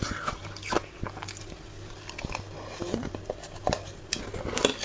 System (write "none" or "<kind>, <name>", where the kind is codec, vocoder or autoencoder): none